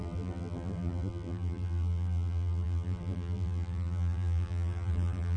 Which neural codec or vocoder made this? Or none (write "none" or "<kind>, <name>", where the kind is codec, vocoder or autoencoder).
vocoder, BigVGAN v2